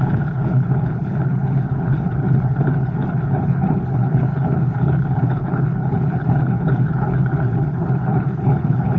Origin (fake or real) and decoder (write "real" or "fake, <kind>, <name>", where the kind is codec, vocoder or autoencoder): fake, codec, HILCodec